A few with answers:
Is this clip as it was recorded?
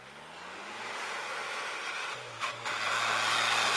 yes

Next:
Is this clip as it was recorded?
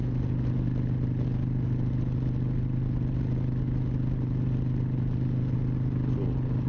yes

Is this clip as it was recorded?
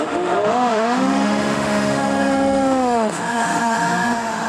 no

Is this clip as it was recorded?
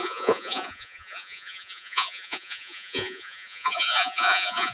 no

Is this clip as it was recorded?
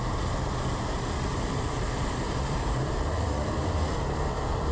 no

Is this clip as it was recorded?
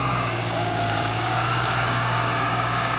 no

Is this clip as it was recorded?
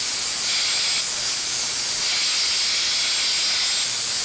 yes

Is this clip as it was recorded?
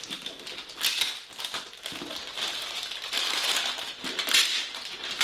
yes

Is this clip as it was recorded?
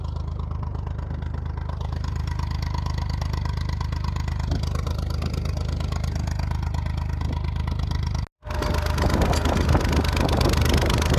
yes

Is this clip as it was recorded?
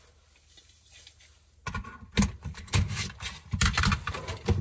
yes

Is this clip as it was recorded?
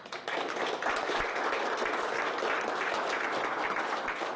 yes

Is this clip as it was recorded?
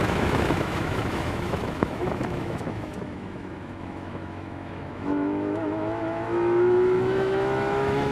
no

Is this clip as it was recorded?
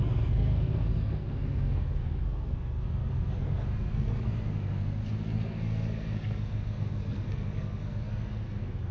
no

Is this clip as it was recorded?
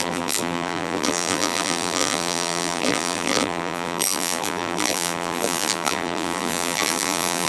no